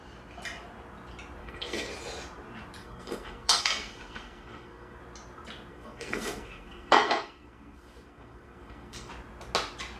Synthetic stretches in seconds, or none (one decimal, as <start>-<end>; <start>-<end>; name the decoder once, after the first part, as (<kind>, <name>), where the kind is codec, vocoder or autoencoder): 1.4-1.9 (codec, SNAC); 2.8-5.0; 5.7-9.1